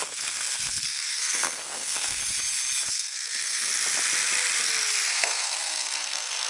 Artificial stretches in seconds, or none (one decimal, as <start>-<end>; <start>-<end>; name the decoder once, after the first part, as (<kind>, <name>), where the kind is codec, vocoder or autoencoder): 0.0-2.2 (codec, SNAC); 2.9-3.7; 5.1-6.5